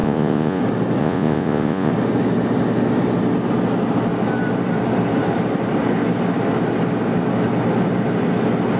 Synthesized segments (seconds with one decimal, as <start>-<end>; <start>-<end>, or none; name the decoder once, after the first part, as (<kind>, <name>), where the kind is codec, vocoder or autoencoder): 0.0-0.6 (vocoder, Vocos); 1.0-1.9